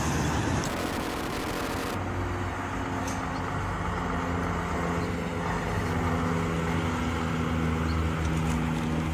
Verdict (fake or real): real